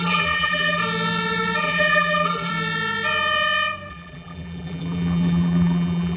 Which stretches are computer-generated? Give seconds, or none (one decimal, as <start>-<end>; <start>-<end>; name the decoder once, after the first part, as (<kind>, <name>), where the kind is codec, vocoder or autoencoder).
0.0-0.8 (vocoder, BigVGAN v2); 1.6-2.5; 3.9-6.2